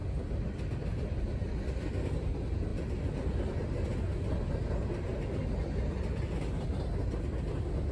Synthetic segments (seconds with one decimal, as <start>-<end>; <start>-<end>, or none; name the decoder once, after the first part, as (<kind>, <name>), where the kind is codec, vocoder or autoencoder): none